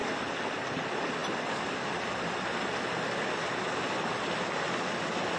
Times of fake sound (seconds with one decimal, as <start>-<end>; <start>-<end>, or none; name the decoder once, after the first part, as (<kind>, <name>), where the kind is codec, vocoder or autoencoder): none